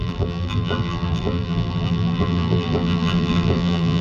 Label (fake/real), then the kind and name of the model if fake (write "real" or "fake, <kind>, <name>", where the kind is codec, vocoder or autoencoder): fake, vocoder, BigVGAN v2